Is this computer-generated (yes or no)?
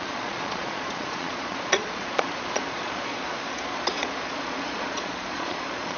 yes